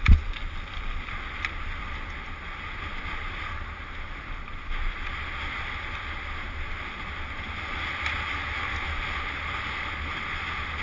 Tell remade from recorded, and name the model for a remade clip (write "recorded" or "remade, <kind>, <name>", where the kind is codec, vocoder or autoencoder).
recorded